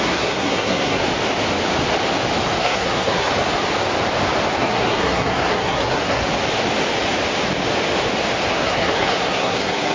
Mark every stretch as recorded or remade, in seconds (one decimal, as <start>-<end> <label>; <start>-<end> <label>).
0.0-1.0 remade; 1.0-2.6 recorded; 2.6-3.3 remade; 3.3-4.6 recorded; 4.6-6.2 remade; 6.2-8.5 recorded; 8.5-9.9 remade